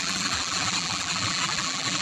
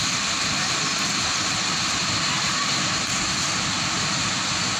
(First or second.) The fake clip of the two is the first